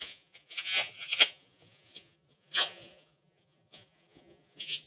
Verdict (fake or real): fake